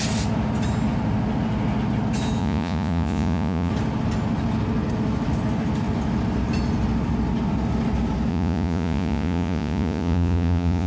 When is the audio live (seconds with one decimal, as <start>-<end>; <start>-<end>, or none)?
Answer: 0.0-2.4; 3.7-8.3